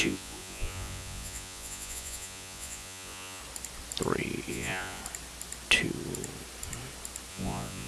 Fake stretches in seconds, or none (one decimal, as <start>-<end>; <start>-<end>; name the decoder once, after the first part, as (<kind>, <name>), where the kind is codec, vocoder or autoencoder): 0.0-3.4 (vocoder, Vocos); 4.5-5.0; 7.3-7.9